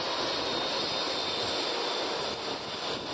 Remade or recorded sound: recorded